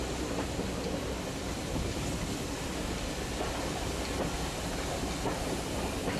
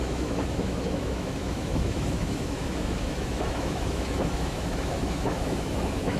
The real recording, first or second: first